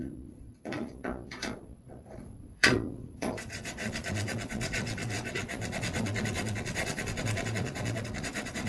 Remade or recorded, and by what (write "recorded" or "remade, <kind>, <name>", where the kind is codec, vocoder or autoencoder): remade, vocoder, Vocos